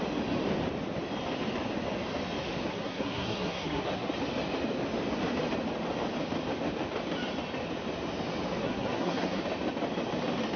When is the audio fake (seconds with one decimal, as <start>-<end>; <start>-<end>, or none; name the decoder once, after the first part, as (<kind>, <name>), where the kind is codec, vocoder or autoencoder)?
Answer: 2.7-4.1 (codec, SNAC); 8.6-9.4

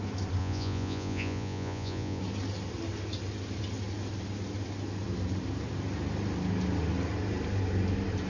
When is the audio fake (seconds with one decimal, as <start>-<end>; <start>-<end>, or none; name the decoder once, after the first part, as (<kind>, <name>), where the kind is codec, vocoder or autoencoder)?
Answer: 0.4-2.2 (vocoder, Vocos)

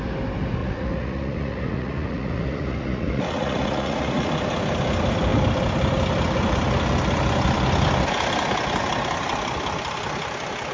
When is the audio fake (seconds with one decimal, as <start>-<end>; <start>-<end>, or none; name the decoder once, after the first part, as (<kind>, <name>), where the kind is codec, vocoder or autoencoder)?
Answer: 0.6-4.3 (vocoder, Vocos)

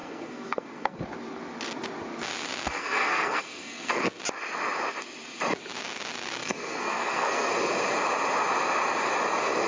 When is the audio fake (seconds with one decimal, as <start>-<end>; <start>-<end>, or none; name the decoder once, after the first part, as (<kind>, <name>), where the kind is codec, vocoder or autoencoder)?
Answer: 0.0-1.0 (codec, SNAC); 2.7-4.0; 6.4-7.5

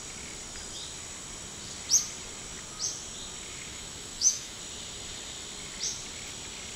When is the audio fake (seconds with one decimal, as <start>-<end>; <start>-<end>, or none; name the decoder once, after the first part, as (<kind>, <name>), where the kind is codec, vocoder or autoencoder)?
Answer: 3.7-4.6 (autoencoder, DAC-VAE)

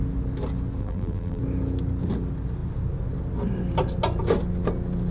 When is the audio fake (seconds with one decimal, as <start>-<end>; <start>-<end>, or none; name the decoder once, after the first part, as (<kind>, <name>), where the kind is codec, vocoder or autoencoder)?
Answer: 0.8-1.4 (vocoder, BigVGAN v2)

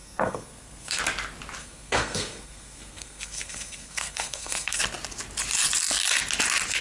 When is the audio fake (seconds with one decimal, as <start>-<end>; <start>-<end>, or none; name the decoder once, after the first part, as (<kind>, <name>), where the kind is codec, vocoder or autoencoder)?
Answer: 0.0-1.0 (codec, SNAC); 1.6-4.8